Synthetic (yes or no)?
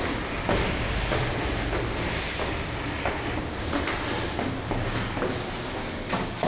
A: no